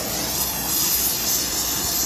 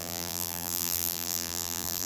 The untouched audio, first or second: first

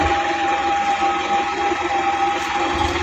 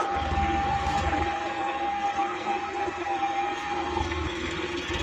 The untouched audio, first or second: first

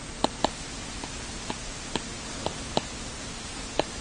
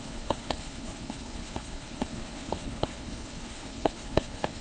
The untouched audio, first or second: first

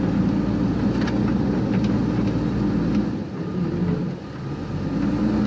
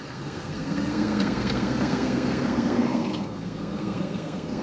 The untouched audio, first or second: first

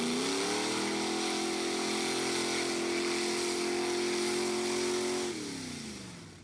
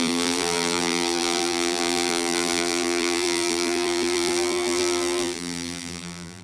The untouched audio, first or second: first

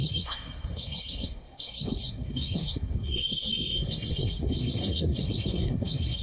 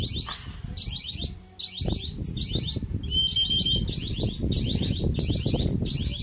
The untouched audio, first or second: second